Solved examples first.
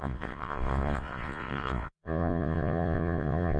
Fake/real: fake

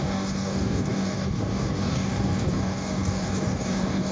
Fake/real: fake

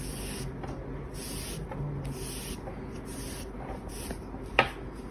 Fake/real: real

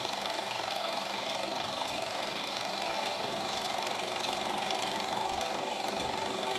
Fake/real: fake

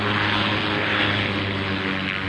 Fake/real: real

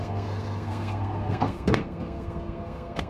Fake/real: fake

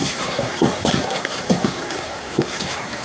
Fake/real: fake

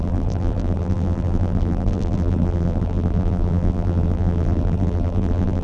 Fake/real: fake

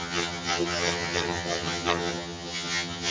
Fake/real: fake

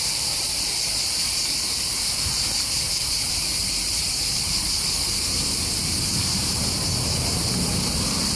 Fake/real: fake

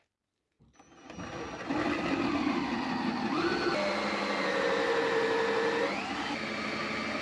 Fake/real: real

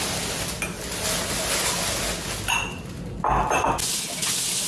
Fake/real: real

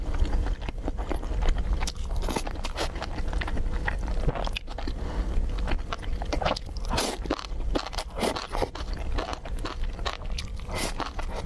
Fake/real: real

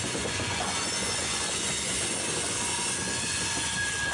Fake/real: fake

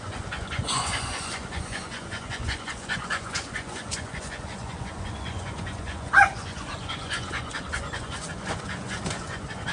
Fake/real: fake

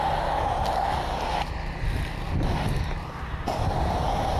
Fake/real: real